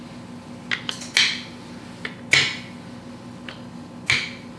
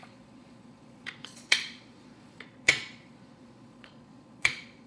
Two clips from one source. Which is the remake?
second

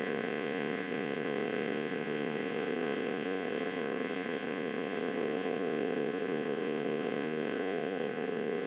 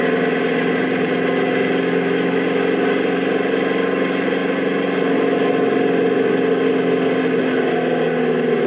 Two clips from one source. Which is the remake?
first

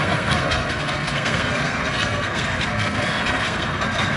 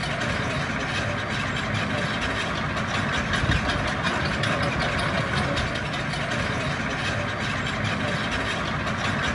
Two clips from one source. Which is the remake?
first